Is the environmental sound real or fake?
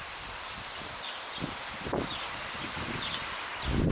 real